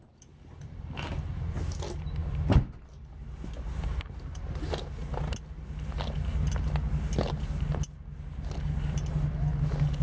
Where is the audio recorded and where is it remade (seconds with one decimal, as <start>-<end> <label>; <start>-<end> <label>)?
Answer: 0.0-10.0 recorded